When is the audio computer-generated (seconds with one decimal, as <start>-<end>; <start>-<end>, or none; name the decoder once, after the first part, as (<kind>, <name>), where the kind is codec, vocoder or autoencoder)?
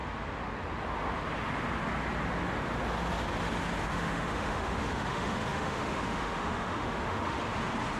3.9-7.4 (autoencoder, DAC-VAE)